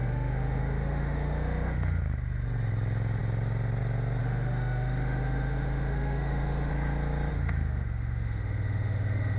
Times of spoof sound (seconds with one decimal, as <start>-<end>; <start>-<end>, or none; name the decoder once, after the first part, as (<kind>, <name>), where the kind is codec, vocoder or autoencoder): 0.0-2.0 (autoencoder, DAC-VAE); 4.2-6.7; 7.3-9.4